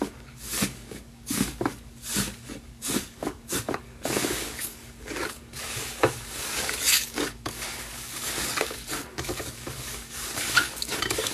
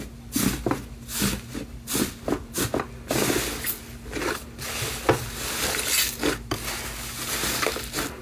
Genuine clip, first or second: second